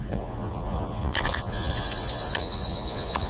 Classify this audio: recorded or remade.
remade